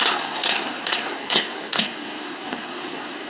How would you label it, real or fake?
fake